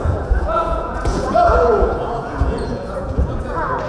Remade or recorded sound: remade